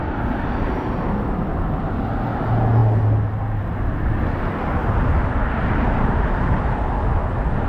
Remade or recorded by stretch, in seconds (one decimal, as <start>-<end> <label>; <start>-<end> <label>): 0.0-7.7 recorded